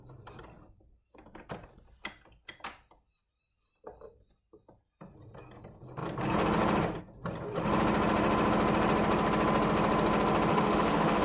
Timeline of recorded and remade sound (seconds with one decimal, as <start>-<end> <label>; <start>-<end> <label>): 0.0-10.5 recorded; 10.5-11.2 remade